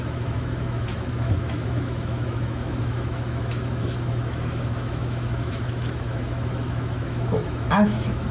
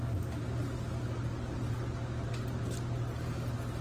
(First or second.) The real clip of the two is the second